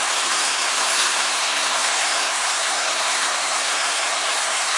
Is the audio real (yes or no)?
no